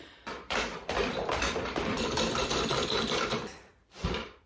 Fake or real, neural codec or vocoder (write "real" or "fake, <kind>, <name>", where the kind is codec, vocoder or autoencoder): fake, vocoder, BigVGAN v2